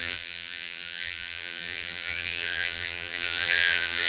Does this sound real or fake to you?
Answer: fake